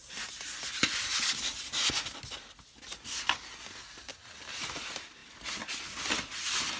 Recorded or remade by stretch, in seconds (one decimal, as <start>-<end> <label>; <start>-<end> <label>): 0.0-6.8 recorded